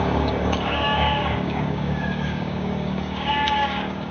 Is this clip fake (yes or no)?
yes